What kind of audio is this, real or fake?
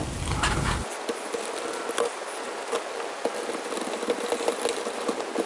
real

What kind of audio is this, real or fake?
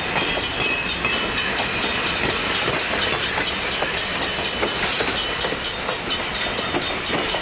fake